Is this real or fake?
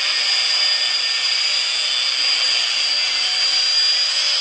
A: real